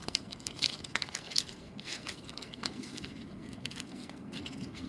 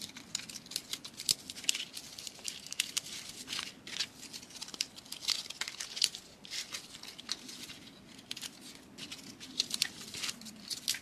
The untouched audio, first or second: second